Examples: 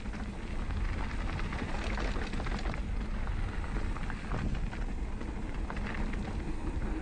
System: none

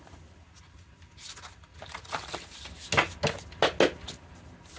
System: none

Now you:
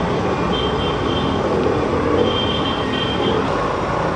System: none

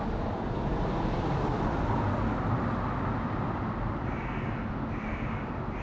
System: none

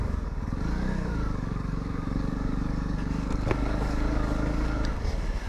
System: codec, DAC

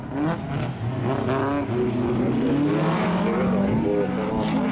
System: none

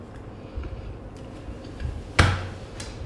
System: none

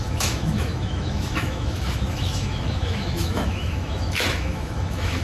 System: autoencoder, DAC-VAE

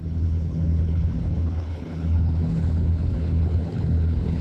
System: codec, HILCodec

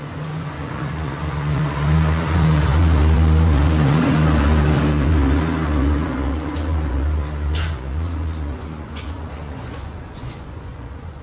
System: vocoder, Vocos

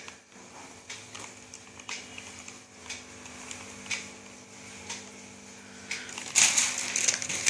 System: none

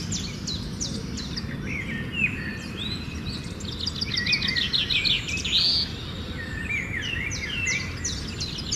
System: none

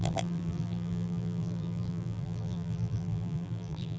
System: vocoder, BigVGAN v2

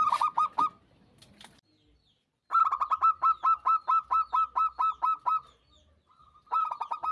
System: none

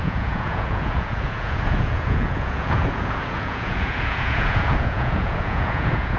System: vocoder, Vocos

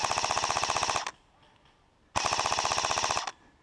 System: none